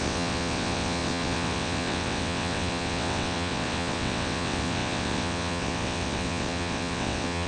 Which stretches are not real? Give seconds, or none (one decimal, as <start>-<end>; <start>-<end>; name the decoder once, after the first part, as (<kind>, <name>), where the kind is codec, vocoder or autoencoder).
0.0-7.5 (vocoder, WaveNeXt)